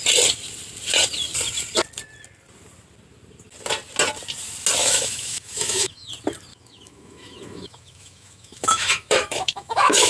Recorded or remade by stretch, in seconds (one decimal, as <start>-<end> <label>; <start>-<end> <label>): 0.0-4.8 recorded; 4.8-6.1 remade; 6.1-6.5 recorded; 6.5-10.1 remade